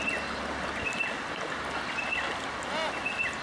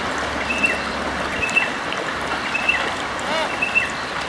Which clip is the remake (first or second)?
second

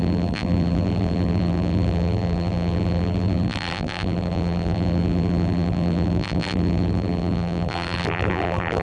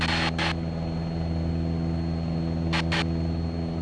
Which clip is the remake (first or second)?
first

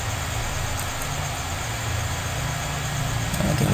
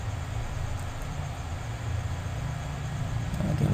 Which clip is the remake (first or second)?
second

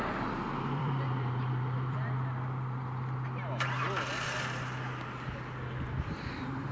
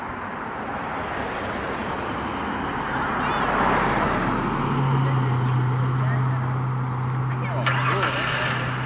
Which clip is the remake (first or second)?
first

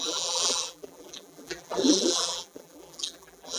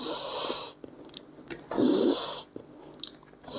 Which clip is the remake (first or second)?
first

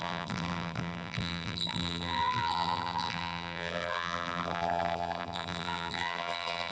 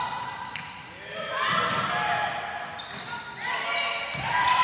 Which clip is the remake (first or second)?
first